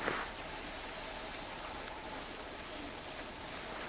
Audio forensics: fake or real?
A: real